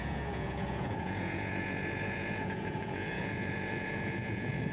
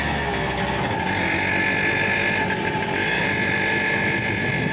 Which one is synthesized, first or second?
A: first